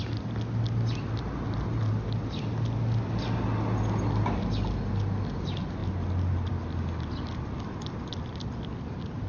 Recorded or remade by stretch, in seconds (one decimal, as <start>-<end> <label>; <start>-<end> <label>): 0.0-9.3 recorded